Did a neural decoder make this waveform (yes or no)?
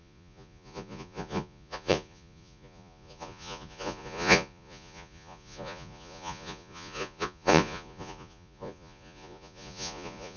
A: yes